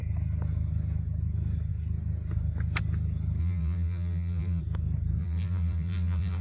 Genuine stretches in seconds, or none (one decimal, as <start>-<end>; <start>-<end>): 0.0-3.4; 4.6-5.2